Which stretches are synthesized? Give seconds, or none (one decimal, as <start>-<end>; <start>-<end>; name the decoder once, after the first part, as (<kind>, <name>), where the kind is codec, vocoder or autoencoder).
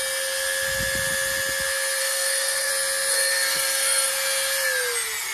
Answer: 2.0-2.7 (codec, SNAC); 3.1-4.1